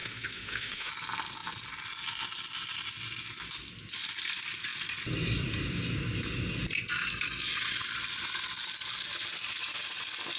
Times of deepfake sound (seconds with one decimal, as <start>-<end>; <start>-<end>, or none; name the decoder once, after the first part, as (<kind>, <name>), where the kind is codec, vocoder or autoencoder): 0.0-0.9 (autoencoder, DAC-VAE)